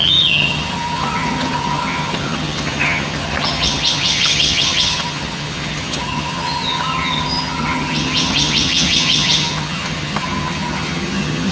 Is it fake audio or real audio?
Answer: fake